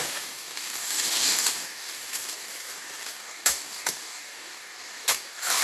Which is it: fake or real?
fake